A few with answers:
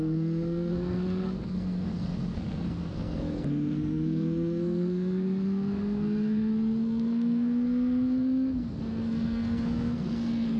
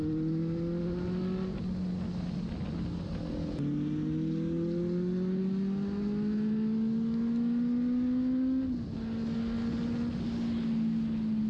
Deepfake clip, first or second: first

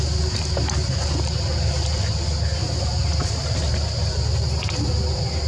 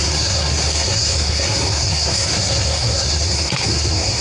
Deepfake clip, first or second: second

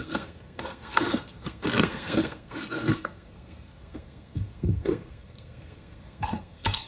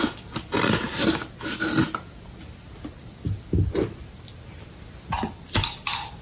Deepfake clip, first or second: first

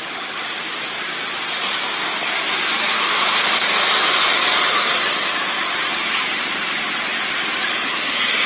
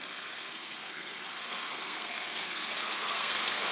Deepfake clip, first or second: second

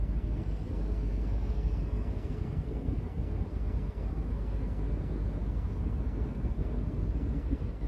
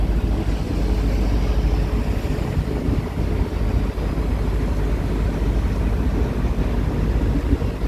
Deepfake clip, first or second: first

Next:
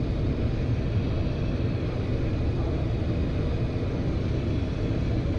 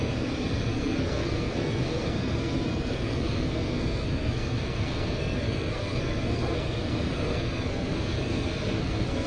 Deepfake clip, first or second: second